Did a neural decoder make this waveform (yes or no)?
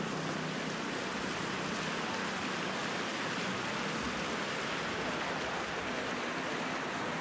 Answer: no